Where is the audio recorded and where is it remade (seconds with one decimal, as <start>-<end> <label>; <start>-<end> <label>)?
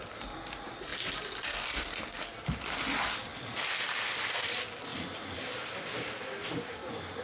0.0-0.9 recorded; 0.9-1.6 remade; 1.6-3.3 recorded; 3.3-4.5 remade; 4.5-4.9 recorded; 4.9-5.5 remade; 5.5-7.2 recorded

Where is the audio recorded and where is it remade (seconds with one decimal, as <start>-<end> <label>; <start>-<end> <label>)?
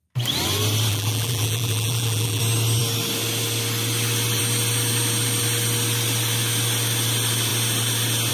0.0-0.9 recorded; 0.9-2.4 remade; 2.4-8.3 recorded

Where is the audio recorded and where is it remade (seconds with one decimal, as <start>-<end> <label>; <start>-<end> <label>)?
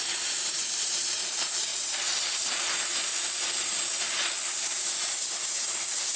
0.0-1.7 remade; 1.7-2.3 recorded; 2.3-3.1 remade; 3.1-4.6 recorded; 4.6-6.2 remade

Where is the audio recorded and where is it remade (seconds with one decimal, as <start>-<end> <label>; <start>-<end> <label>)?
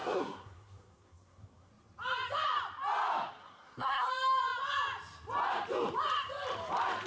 0.0-1.7 remade; 1.7-3.4 recorded; 3.4-4.1 remade; 4.1-7.1 recorded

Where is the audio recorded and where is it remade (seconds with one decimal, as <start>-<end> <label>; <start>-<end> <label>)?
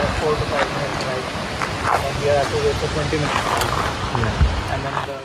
0.0-5.2 recorded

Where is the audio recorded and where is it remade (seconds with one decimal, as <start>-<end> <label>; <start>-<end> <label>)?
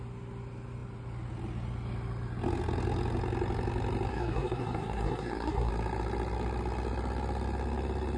0.0-4.1 recorded; 4.1-5.7 remade; 5.7-8.2 recorded